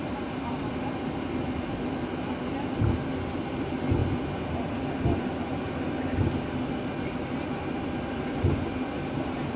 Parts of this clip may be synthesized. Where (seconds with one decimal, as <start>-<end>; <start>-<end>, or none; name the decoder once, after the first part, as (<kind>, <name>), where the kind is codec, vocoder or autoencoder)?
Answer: none